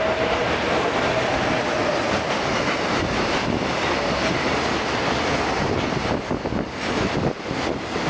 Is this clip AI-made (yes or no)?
no